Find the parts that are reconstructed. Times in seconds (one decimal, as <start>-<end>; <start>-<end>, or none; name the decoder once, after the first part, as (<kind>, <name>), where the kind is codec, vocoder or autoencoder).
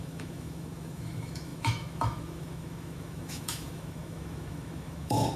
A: 0.0-5.4 (autoencoder, DAC-VAE)